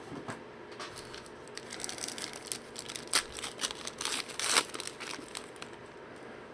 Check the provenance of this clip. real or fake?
real